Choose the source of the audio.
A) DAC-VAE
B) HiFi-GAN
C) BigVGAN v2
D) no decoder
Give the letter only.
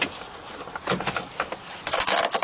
D